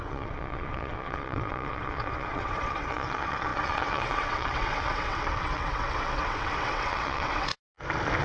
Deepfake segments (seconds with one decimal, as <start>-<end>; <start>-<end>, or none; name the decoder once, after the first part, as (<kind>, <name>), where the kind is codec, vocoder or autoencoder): 0.0-7.5 (vocoder, WaveNeXt)